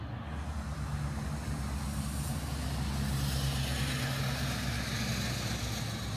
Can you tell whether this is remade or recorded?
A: recorded